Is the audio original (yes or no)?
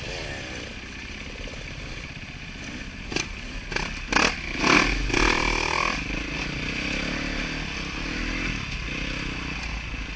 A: yes